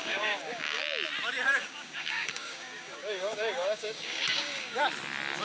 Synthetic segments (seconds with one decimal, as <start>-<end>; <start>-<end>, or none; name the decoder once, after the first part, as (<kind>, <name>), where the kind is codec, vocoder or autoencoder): 0.0-0.8 (codec, DAC); 1.6-4.8